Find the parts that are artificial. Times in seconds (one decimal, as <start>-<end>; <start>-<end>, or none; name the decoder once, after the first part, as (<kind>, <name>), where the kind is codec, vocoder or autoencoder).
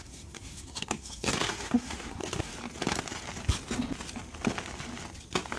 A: 0.0-2.5 (codec, SNAC)